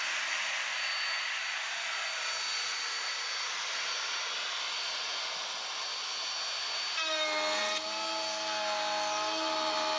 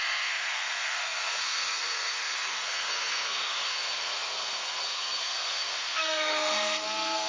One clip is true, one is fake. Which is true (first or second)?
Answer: first